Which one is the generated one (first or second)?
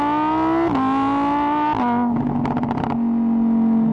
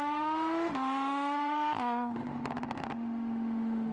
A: second